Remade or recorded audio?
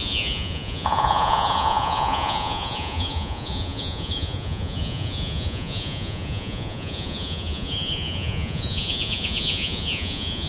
remade